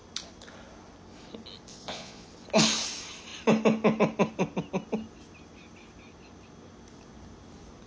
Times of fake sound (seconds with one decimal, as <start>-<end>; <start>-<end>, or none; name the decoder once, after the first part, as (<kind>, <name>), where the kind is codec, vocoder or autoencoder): 1.7-2.3 (vocoder, Vocos)